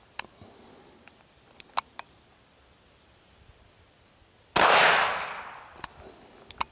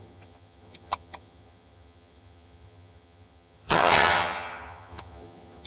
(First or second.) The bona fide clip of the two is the first